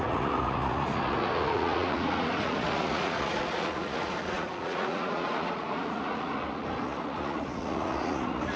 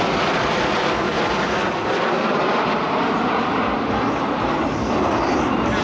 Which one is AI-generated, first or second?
first